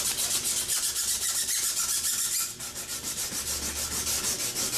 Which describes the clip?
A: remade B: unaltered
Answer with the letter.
B